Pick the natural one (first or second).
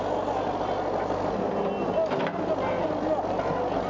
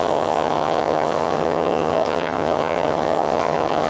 first